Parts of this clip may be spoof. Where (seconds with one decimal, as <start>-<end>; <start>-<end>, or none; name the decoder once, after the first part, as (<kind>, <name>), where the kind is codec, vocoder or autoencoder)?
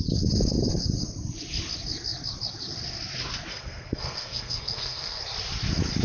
3.5-5.2 (codec, SNAC)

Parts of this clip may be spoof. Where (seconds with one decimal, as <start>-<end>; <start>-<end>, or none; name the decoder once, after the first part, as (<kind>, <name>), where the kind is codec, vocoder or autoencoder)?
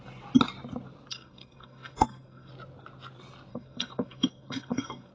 1.1-2.5 (codec, SNAC); 3.5-5.1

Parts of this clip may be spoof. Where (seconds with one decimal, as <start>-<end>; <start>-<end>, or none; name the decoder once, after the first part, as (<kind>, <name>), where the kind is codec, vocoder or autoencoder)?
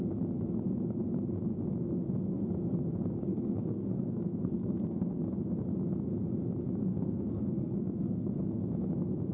3.3-5.1 (codec, SNAC); 6.9-8.6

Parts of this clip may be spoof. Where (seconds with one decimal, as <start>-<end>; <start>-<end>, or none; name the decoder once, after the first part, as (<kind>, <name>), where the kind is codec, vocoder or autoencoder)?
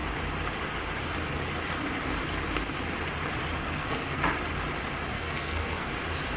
3.6-4.2 (codec, SNAC); 5.1-5.9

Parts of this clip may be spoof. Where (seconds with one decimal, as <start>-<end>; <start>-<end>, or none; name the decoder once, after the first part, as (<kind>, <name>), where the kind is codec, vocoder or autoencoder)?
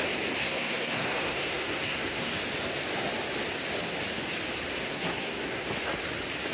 0.4-2.3 (codec, SNAC); 4.8-5.7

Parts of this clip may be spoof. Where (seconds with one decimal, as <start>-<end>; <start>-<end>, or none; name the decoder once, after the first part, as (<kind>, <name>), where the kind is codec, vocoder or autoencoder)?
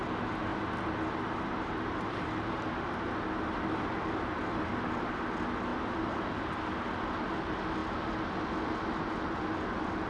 none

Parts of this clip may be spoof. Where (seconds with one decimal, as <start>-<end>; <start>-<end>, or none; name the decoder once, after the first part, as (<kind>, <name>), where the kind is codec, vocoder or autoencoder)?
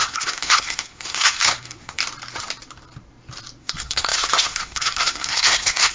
0.0-2.0 (codec, SNAC); 3.6-5.9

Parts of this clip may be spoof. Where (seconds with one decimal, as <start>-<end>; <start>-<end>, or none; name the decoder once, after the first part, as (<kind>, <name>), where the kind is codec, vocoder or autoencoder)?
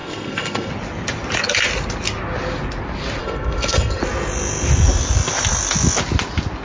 0.0-0.7 (codec, SNAC); 3.2-4.0